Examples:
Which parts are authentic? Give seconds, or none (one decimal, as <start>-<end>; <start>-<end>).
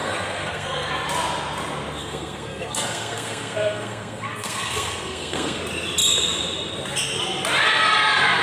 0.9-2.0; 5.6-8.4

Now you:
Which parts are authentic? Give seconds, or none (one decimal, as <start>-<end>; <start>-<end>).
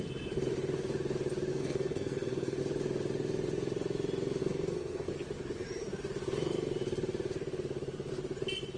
0.0-1.5; 2.6-4.4; 5.1-8.8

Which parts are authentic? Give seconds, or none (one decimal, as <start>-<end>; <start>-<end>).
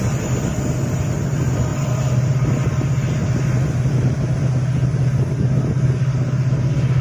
0.0-7.0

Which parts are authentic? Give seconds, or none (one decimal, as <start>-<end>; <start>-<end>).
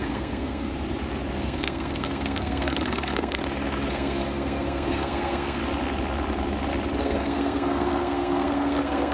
0.7-1.4; 3.4-3.9; 5.6-7.0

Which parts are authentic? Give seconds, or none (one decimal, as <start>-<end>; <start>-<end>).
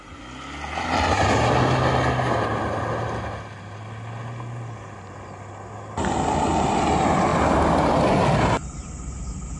0.0-9.6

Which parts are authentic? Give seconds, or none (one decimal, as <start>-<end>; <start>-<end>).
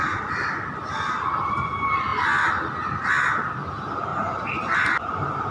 0.0-5.5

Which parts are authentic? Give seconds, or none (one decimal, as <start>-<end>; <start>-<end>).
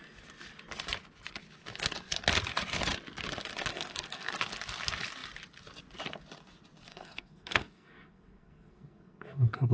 0.0-3.7; 4.3-6.9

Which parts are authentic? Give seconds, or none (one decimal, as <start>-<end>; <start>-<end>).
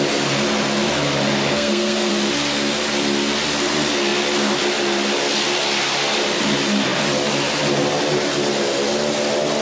0.0-1.5; 2.1-9.6